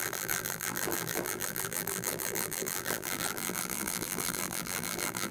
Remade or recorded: remade